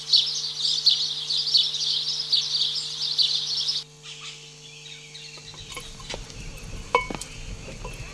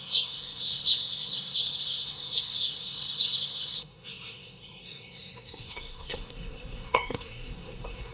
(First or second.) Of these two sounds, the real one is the first